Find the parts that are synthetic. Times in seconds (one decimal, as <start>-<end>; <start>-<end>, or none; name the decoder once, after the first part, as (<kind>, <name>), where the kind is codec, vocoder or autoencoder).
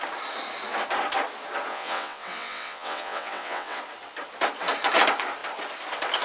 1.7-3.8 (vocoder, WaveNeXt)